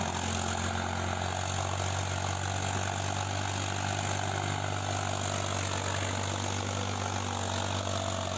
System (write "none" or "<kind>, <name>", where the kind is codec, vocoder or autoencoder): none